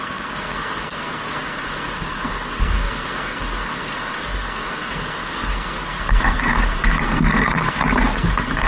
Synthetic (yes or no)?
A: yes